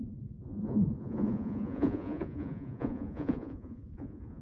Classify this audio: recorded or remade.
remade